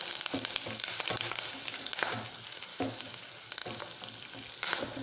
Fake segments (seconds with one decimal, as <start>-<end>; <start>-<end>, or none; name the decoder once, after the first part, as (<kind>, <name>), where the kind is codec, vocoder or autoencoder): 2.7-3.2 (autoencoder, DAC-VAE)